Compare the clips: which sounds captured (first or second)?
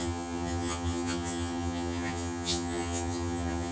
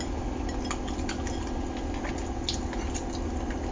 second